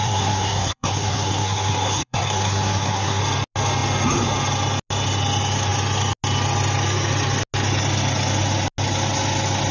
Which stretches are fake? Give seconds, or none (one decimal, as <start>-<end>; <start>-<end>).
0.0-3.2